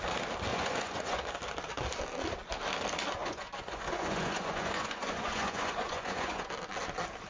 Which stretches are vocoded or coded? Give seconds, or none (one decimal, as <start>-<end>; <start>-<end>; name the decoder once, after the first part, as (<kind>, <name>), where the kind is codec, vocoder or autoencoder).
0.5-1.2 (vocoder, Vocos); 3.2-6.5